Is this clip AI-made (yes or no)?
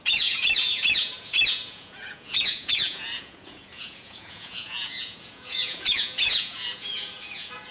yes